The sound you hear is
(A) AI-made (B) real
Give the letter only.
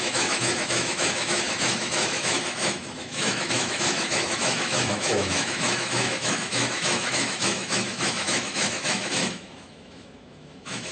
A